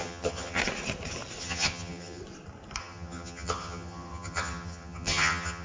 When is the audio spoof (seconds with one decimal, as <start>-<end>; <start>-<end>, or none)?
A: 0.0-0.6; 1.4-2.2; 2.8-5.6